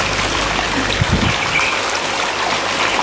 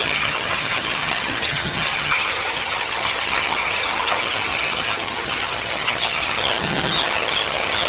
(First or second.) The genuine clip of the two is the first